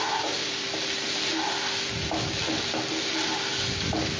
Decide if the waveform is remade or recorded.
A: recorded